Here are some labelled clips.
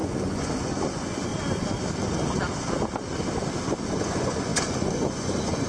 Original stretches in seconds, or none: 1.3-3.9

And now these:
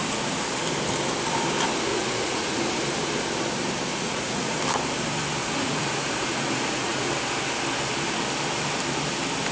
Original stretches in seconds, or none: 0.0-1.9; 2.8-3.9; 4.6-5.4; 7.1-9.5